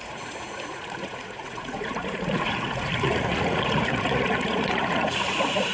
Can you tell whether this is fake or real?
fake